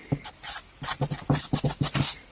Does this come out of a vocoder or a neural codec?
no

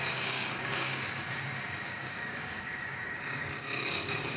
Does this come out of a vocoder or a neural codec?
yes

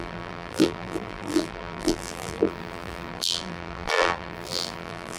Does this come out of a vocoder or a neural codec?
yes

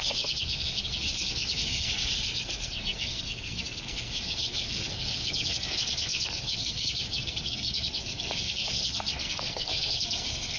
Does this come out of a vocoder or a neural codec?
yes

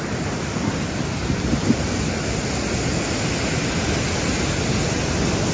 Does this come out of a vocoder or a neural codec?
no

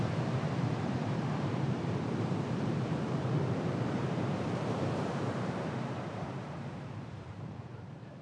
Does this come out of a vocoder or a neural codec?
yes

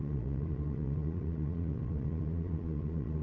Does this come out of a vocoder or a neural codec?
yes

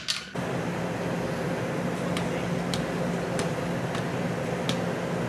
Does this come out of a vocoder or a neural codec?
no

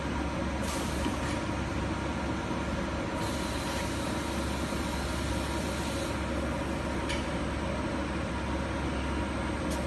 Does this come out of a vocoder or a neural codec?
no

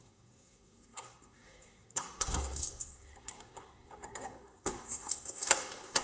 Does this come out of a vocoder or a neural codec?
yes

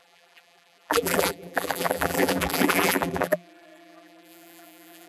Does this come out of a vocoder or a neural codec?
yes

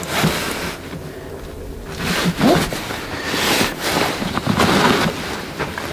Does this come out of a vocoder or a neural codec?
no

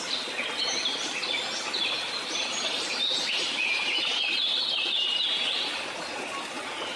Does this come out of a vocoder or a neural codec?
no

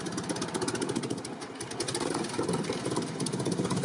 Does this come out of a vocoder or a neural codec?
no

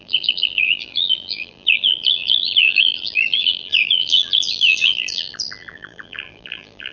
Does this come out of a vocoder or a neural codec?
yes